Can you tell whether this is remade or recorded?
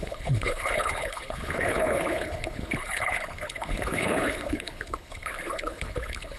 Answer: remade